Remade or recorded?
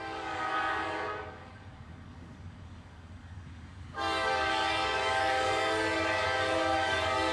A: remade